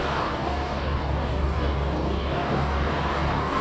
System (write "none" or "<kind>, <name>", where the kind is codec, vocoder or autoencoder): codec, DAC